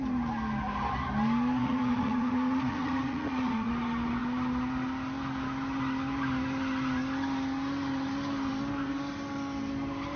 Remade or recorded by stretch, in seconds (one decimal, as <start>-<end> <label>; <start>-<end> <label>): 0.0-1.6 recorded; 1.6-3.7 remade; 3.7-10.2 recorded